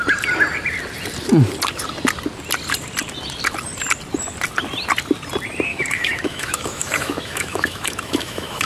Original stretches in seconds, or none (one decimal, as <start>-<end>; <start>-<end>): 0.0-5.7